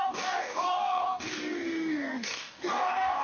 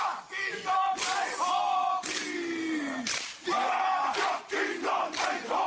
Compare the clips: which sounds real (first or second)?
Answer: second